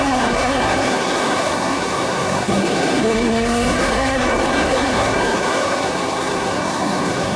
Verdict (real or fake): fake